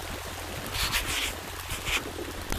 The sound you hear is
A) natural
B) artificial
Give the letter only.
A